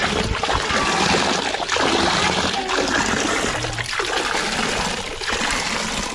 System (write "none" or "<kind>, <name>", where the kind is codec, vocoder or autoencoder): none